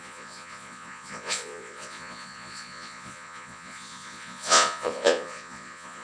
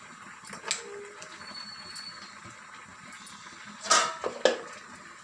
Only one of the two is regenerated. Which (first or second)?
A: first